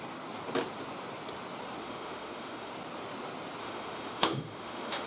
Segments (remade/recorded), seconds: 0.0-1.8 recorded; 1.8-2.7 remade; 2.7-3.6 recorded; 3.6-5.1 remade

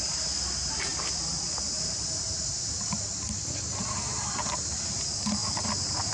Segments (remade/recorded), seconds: 0.0-6.1 recorded

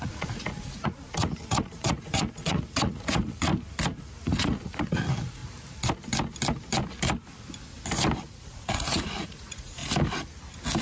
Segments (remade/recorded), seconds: 0.0-3.5 remade; 3.5-4.0 recorded; 4.0-5.4 remade; 5.4-8.3 recorded; 8.3-9.8 remade; 9.8-10.8 recorded

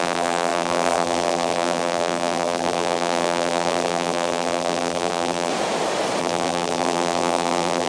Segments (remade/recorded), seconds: 0.0-5.5 remade; 5.5-6.2 recorded; 6.2-7.9 remade

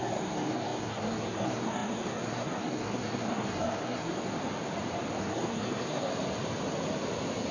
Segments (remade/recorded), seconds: 0.0-4.1 remade; 4.1-5.2 recorded; 5.2-6.1 remade; 6.1-7.5 recorded

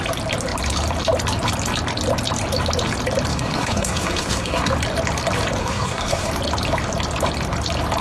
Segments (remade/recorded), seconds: 0.0-3.3 recorded; 3.3-4.7 remade; 4.7-5.6 recorded; 5.6-6.3 remade; 6.3-8.0 recorded

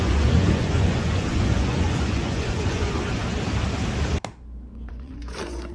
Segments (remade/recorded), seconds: 0.0-3.2 remade; 3.2-4.9 recorded; 4.9-5.7 remade